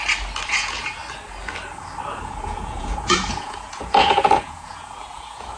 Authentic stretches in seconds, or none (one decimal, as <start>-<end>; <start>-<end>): 0.0-0.5; 1.0-2.3